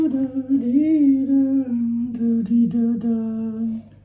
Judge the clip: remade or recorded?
recorded